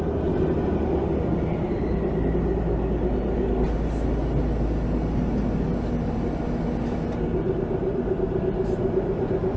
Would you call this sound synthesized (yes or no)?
no